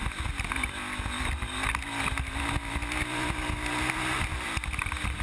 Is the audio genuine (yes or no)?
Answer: yes